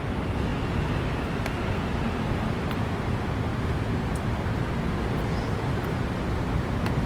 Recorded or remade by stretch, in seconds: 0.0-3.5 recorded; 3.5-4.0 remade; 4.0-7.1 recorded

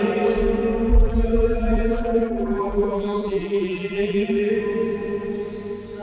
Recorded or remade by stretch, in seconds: 0.0-0.9 recorded; 0.9-4.5 remade; 4.5-6.0 recorded